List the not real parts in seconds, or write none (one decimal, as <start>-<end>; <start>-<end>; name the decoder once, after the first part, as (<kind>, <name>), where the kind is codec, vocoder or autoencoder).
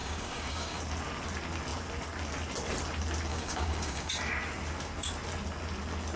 0.0-0.8 (codec, DAC); 3.3-4.1